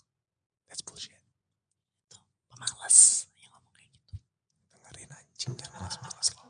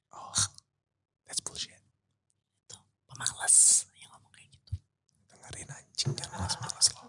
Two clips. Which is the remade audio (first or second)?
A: first